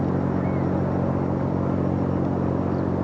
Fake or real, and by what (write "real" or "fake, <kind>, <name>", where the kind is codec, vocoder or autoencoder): real